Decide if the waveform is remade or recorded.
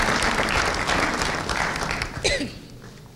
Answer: recorded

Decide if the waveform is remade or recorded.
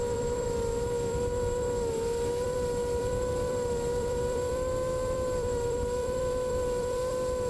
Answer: remade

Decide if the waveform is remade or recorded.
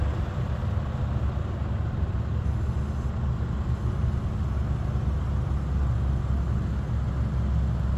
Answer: recorded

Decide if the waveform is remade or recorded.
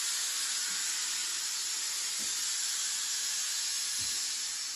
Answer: recorded